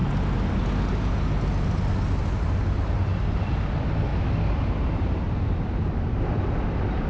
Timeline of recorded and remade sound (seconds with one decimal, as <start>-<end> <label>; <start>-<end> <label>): 0.0-7.1 recorded